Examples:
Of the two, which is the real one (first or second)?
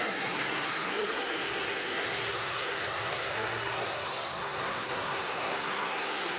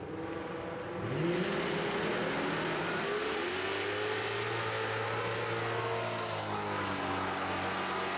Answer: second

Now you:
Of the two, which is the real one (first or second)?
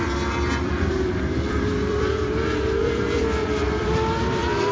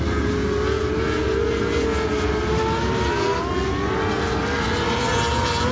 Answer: second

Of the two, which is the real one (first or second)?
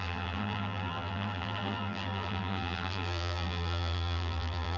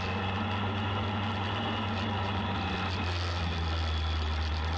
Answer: second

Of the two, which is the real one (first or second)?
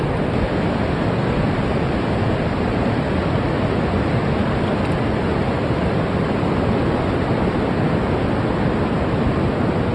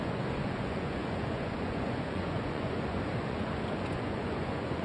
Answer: first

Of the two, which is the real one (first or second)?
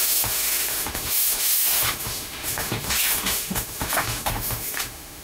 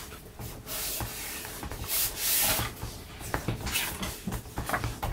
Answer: second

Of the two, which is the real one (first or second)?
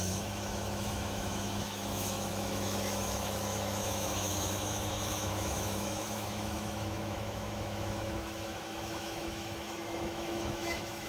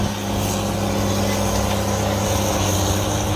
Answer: second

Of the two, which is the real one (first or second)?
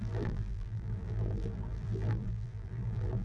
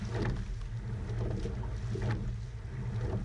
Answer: second